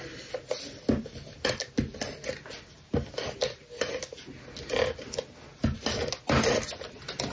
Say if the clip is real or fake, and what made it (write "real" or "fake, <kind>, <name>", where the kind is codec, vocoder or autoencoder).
real